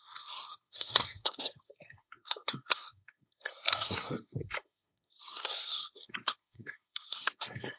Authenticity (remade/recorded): remade